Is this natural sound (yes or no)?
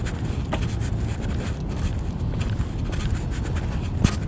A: yes